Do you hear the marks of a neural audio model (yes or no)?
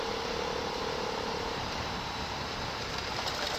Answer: yes